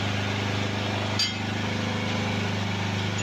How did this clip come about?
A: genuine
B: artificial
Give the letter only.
A